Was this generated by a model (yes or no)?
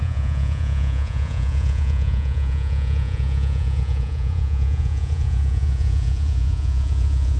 yes